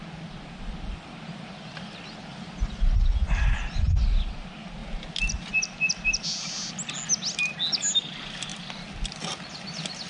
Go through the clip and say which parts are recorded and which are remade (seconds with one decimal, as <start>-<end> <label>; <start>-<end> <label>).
0.0-10.1 recorded